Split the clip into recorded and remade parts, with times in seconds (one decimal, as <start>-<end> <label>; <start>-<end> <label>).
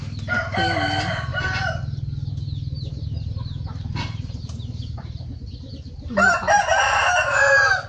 0.0-1.3 recorded; 1.3-1.8 remade; 1.8-2.7 recorded; 2.7-7.0 remade; 7.0-7.9 recorded